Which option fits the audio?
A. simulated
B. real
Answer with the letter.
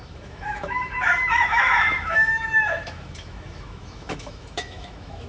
A